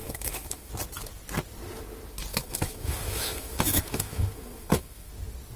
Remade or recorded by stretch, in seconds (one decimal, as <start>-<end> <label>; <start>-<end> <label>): 0.0-0.7 remade; 0.7-2.3 recorded; 2.3-5.1 remade; 5.1-5.6 recorded